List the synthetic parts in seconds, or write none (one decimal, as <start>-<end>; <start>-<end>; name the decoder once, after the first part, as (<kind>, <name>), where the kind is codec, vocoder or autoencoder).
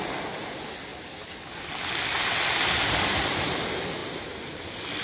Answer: none